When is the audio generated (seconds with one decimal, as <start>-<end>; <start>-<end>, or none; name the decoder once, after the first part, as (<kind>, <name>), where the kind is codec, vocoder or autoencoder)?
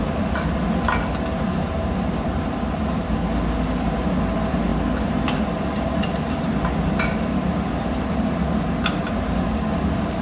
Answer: none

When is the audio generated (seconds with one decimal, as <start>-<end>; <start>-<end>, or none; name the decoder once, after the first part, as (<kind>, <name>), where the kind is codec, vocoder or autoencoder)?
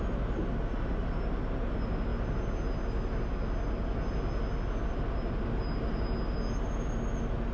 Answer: none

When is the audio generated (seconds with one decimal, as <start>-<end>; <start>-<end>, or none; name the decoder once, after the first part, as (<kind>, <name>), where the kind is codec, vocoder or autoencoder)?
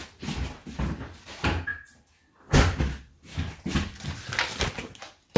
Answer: none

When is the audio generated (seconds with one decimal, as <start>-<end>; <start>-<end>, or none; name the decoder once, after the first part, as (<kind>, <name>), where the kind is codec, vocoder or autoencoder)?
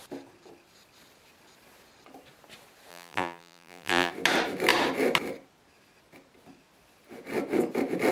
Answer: 2.9-4.1 (vocoder, BigVGAN v2)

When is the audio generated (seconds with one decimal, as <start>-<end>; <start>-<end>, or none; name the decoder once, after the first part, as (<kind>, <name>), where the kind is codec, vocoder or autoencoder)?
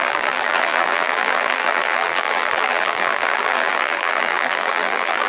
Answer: 0.0-5.3 (vocoder, BigVGAN v2)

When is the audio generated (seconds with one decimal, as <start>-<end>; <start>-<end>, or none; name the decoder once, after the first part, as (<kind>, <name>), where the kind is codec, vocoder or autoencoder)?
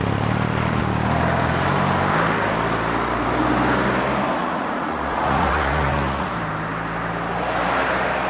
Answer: 4.4-6.3 (vocoder, Vocos)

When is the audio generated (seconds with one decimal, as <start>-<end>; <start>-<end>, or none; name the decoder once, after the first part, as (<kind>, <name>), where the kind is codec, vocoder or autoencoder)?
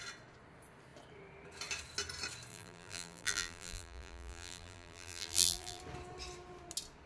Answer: 2.5-5.8 (vocoder, BigVGAN v2)